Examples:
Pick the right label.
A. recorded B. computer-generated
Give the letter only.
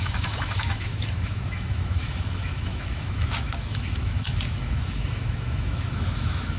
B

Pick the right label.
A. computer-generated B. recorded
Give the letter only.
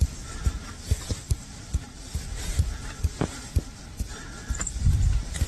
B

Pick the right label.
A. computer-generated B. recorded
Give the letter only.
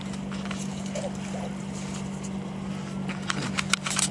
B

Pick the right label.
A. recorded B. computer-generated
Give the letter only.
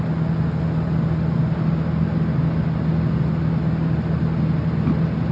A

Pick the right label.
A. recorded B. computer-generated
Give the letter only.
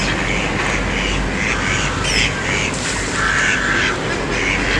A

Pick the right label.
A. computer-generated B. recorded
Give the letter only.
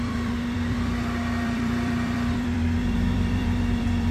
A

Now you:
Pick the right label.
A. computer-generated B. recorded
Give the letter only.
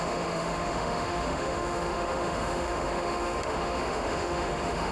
A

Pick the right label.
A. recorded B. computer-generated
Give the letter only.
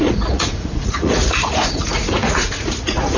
B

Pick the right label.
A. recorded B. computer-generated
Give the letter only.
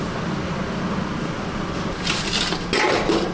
A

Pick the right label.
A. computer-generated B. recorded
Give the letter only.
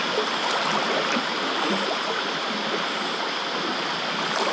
B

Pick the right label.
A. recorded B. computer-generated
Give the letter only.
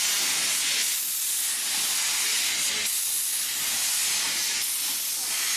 A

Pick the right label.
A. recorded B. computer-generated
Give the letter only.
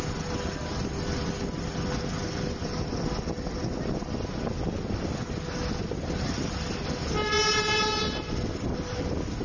A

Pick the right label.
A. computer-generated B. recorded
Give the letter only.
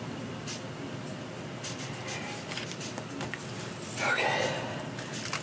B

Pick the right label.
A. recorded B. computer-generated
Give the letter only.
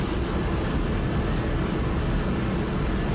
A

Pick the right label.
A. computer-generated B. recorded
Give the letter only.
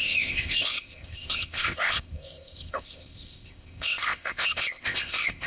A